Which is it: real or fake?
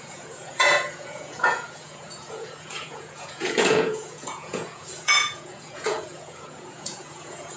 fake